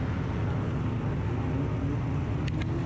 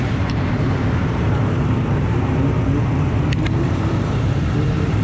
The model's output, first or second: second